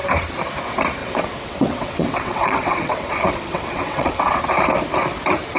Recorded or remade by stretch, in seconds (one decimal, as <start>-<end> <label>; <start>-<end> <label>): 0.0-1.0 recorded; 1.0-4.4 remade; 4.4-5.6 recorded